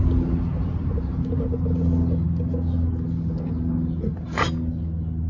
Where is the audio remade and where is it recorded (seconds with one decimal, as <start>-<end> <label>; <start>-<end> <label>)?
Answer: 0.0-5.3 recorded